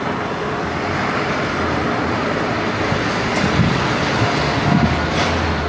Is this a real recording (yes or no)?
yes